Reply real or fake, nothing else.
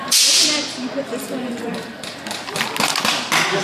real